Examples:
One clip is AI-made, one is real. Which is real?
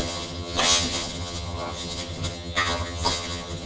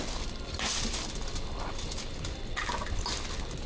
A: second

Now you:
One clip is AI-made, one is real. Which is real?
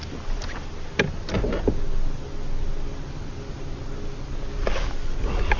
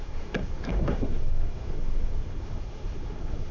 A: first